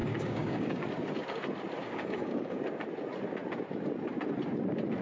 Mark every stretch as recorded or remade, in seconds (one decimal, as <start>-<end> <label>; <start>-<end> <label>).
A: 0.0-0.8 remade; 0.8-1.8 recorded; 1.8-2.6 remade; 2.6-5.0 recorded